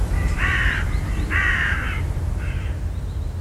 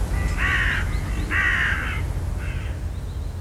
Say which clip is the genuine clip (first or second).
second